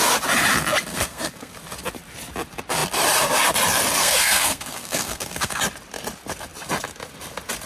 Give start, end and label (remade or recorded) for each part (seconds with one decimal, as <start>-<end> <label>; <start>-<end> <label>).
0.0-0.9 recorded; 0.9-1.5 remade; 1.5-4.0 recorded; 4.0-5.6 remade; 5.6-7.7 recorded